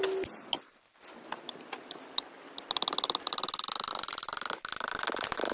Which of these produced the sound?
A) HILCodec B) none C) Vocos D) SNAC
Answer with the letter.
B